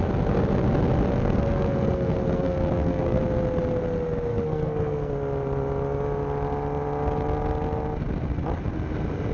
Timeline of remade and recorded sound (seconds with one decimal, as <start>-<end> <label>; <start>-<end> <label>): 0.0-1.2 recorded; 1.2-3.2 remade; 3.2-4.3 recorded; 4.3-5.1 remade; 5.1-9.3 recorded